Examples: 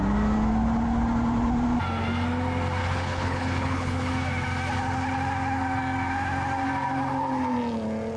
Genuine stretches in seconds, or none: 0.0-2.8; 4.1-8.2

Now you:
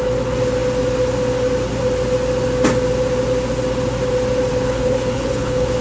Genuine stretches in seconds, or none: 0.0-4.5

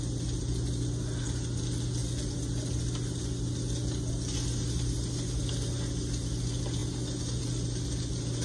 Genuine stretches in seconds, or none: 0.0-8.4

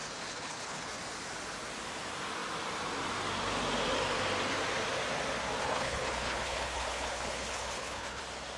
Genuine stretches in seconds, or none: 1.0-5.6; 8.2-8.6